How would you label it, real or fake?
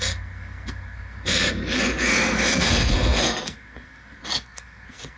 fake